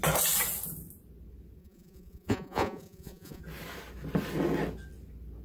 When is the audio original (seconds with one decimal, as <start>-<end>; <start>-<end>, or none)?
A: 0.0-1.6; 3.4-5.4